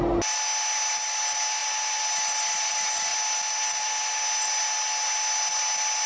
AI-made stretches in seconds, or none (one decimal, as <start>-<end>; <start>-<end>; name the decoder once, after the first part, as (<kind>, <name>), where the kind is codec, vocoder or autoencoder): none